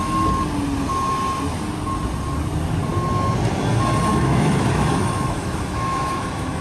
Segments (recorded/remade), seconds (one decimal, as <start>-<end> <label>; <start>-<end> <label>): 0.0-4.1 recorded; 4.1-6.6 remade